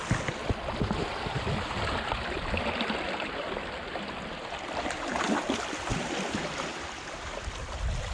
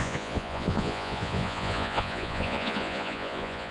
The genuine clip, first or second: first